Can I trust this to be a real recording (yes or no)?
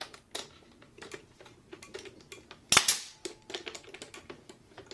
yes